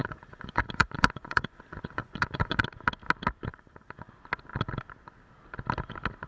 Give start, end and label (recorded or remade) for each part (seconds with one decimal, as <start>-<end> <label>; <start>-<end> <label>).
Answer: 0.0-2.6 remade; 2.6-3.5 recorded; 3.5-4.1 remade; 4.1-6.3 recorded